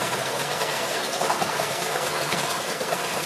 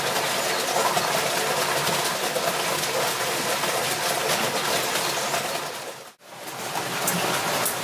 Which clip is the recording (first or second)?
second